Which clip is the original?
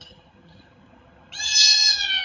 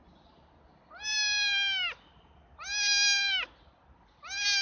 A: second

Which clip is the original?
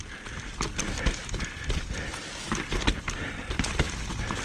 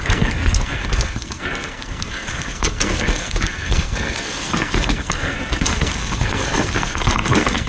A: first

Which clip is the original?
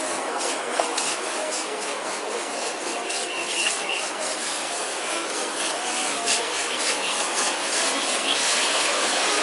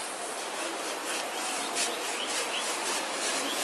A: second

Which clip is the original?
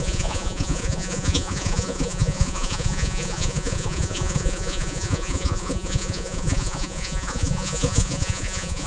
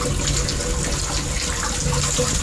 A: second